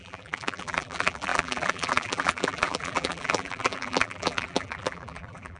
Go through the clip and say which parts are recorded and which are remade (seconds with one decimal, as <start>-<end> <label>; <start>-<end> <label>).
0.0-5.6 remade